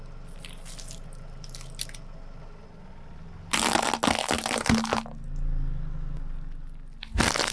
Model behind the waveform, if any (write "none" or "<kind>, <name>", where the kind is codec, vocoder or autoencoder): none